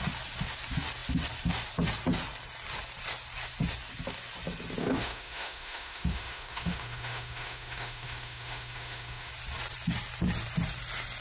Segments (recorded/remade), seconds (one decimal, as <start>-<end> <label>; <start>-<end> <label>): 0.0-4.8 recorded; 4.8-9.3 remade; 9.3-11.2 recorded